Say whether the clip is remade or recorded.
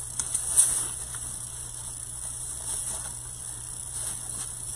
recorded